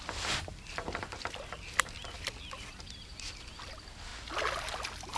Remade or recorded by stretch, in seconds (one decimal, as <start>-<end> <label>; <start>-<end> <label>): 0.0-5.2 recorded